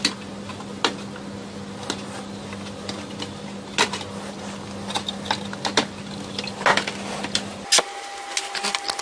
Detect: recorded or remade recorded